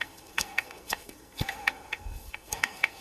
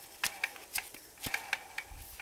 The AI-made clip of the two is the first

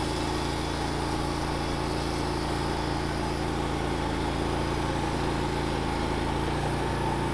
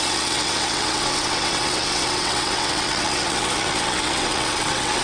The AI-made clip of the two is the second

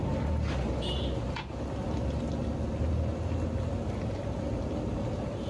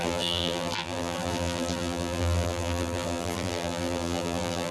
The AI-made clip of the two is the second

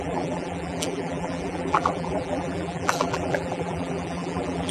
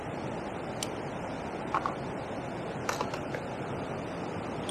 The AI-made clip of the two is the first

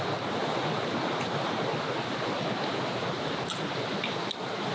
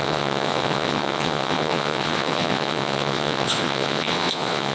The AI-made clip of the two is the second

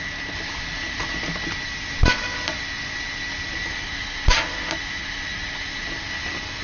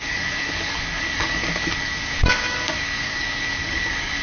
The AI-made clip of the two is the second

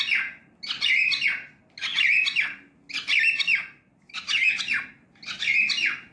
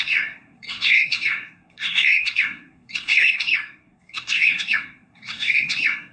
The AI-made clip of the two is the second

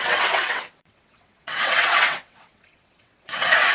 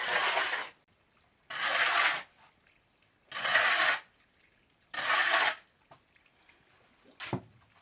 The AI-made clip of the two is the first